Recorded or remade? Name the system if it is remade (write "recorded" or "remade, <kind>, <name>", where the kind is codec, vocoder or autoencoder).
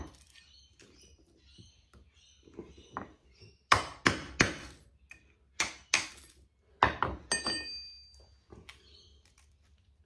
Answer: recorded